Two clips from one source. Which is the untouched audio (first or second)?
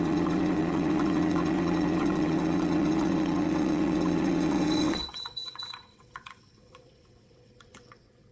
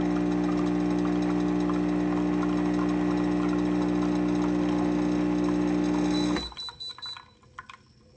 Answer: second